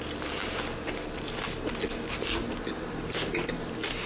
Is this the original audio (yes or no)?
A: yes